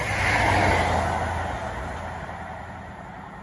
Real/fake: real